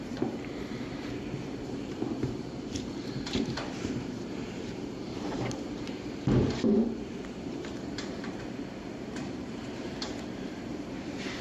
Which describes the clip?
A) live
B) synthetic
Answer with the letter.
B